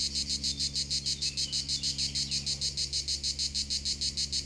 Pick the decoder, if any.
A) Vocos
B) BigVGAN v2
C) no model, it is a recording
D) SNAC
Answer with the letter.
C